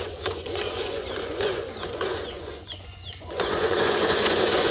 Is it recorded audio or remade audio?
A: remade